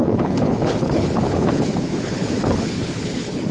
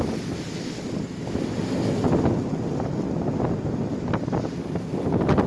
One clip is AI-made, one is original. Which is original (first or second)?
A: second